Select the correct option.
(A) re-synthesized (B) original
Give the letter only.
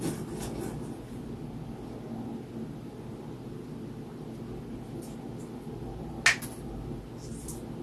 B